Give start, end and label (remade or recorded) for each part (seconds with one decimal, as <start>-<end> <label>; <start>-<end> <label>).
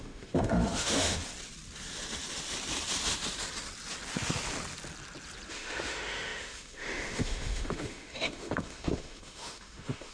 0.0-1.2 remade; 1.2-5.5 recorded; 5.5-10.1 remade